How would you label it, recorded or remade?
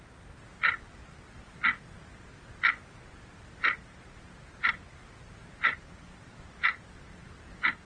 recorded